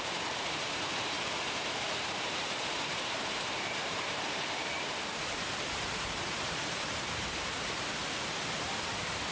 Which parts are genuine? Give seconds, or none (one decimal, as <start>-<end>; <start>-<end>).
8.0-8.6